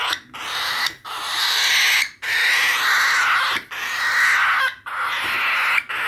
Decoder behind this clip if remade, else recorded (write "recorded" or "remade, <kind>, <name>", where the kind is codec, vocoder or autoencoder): recorded